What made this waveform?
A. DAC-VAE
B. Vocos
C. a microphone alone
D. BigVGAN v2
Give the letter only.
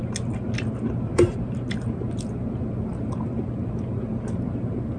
C